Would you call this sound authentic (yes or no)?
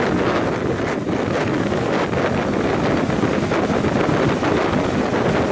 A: yes